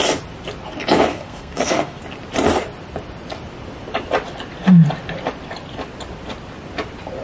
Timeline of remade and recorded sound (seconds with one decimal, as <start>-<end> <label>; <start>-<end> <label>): 0.0-1.1 recorded; 1.1-2.0 remade; 2.0-7.2 recorded